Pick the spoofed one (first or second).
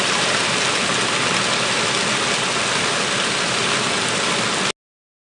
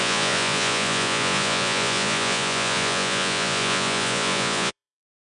second